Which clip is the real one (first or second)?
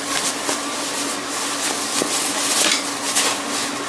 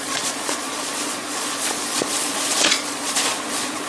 first